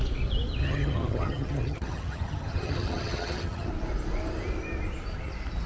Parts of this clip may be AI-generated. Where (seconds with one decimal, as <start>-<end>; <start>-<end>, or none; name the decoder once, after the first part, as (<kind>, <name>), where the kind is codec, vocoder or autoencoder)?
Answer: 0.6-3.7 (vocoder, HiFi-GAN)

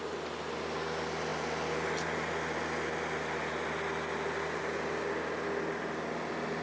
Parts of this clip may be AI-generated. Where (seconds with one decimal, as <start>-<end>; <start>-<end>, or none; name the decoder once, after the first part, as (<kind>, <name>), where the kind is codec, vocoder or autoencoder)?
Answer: none

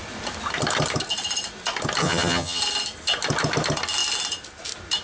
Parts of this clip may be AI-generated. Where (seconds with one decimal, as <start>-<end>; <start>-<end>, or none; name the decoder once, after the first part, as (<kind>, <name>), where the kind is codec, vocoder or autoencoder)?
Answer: 2.0-2.6 (vocoder, HiFi-GAN)

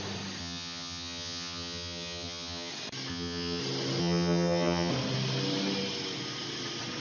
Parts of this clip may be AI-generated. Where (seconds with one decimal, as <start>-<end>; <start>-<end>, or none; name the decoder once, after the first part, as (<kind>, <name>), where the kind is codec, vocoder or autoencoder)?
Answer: 0.4-2.7 (vocoder, HiFi-GAN); 3.1-3.6; 4.0-4.9

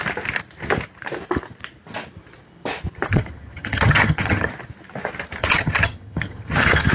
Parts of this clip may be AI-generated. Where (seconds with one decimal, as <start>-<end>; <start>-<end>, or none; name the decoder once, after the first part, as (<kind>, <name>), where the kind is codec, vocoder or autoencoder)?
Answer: 3.1-4.5 (vocoder, HiFi-GAN); 5.4-6.9

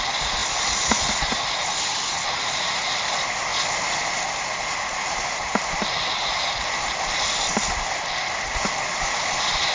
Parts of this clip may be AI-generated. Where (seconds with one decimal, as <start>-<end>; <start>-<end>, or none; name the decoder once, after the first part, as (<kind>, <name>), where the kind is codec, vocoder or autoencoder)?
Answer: none

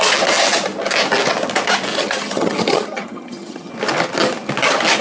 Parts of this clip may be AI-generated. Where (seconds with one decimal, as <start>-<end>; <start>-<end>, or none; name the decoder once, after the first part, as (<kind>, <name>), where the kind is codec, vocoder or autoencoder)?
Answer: 1.9-3.7 (vocoder, HiFi-GAN)

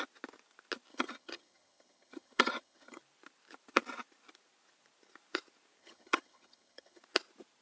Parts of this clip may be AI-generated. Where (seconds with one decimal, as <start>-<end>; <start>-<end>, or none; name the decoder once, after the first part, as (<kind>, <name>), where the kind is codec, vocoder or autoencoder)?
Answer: 0.9-3.0 (vocoder, HiFi-GAN); 5.8-7.0